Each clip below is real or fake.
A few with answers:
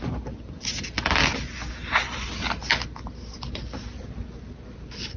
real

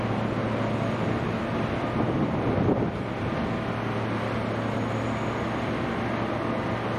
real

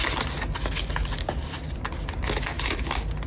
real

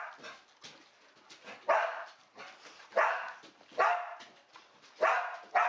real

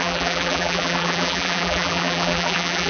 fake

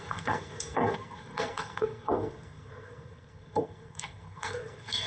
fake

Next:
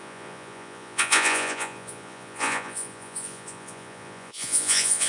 fake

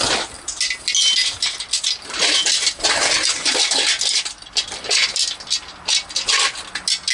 real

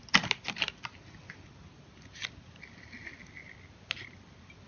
real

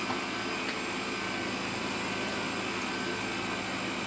real